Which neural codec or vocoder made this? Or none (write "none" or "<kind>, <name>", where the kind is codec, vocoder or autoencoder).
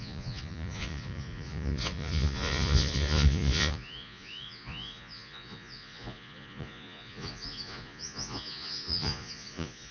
vocoder, Vocos